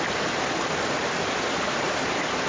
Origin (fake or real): real